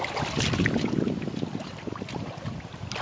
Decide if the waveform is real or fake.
real